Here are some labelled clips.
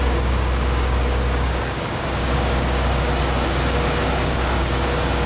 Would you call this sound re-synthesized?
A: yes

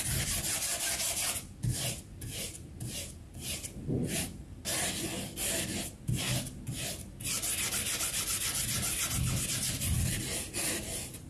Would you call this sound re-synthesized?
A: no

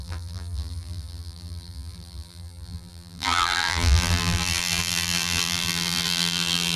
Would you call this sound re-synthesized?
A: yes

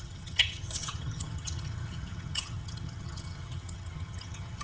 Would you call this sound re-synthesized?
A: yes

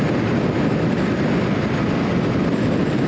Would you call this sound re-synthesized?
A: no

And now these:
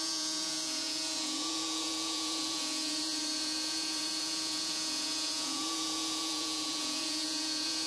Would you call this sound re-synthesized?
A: yes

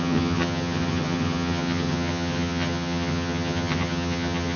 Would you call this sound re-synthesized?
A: yes